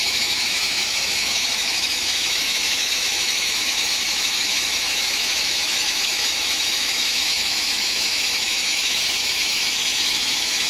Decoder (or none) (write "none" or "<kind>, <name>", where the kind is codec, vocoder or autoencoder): autoencoder, DAC-VAE